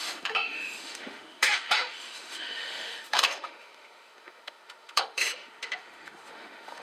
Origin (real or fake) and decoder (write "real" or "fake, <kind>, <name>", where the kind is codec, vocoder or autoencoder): fake, autoencoder, DAC-VAE